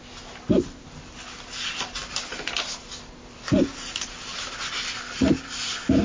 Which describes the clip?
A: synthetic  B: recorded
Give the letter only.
B